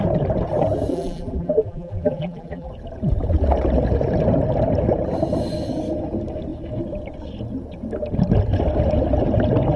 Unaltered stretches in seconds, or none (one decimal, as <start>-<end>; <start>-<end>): 0.0-0.9; 2.7-9.8